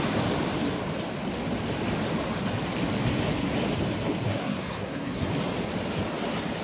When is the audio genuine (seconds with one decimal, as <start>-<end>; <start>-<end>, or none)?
0.0-4.3; 5.3-6.6